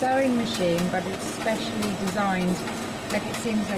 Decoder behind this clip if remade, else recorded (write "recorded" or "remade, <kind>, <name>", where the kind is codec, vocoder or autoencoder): recorded